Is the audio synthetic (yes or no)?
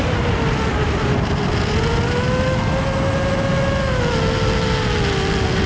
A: no